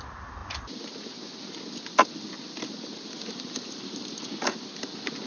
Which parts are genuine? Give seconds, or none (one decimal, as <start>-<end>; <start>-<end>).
0.0-5.3